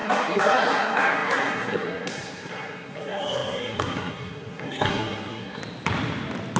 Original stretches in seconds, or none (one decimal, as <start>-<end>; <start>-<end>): 5.6-6.6

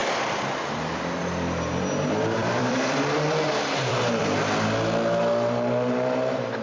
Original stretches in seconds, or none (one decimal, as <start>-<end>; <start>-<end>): 0.0-2.4; 4.2-6.6

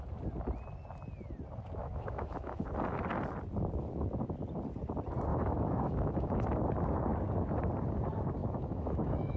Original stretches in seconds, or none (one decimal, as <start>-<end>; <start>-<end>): 0.0-1.8; 2.6-5.3; 6.3-8.4

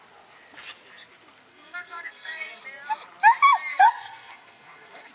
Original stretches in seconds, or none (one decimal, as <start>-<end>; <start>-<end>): 0.0-1.5; 2.6-3.7

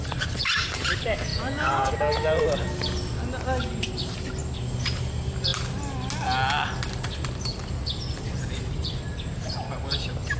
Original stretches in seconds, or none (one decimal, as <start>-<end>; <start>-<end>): 0.0-1.3; 1.9-10.4